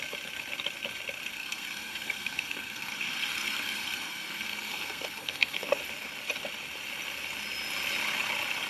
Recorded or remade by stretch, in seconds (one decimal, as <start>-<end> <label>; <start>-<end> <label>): 0.0-1.3 recorded; 1.3-5.8 remade; 5.8-8.7 recorded